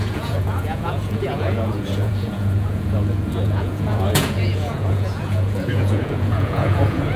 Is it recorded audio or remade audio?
remade